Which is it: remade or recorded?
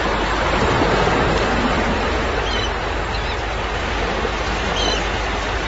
remade